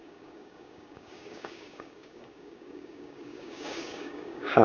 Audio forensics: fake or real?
fake